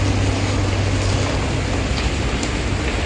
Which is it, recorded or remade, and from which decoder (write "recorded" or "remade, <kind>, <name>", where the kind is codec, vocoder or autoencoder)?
recorded